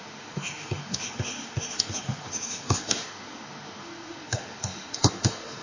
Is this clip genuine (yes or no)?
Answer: no